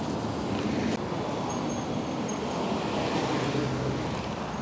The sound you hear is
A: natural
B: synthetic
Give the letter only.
A